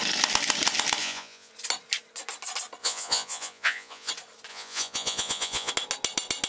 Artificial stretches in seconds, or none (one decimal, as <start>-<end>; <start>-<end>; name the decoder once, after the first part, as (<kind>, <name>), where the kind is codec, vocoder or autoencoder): 1.0-1.5 (vocoder, Vocos); 2.8-4.1; 4.5-5.7